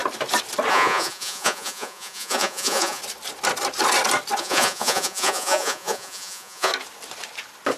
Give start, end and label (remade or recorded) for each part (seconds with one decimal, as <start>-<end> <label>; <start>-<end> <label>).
0.0-0.7 recorded; 0.7-3.0 remade; 3.0-4.4 recorded; 4.4-6.7 remade; 6.7-7.8 recorded